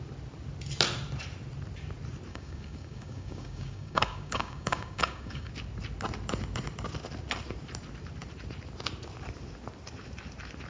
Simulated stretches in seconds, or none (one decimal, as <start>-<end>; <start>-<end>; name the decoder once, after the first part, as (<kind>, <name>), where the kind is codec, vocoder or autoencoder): 2.3-5.5 (codec, DAC)